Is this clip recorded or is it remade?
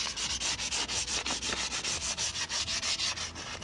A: recorded